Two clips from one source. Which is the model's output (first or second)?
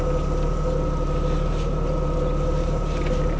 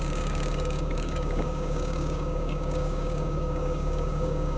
second